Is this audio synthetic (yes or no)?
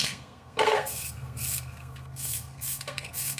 yes